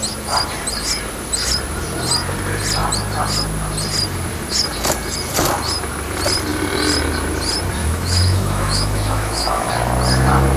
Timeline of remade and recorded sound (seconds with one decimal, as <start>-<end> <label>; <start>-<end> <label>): 0.0-7.8 recorded; 7.8-9.7 remade; 9.7-10.6 recorded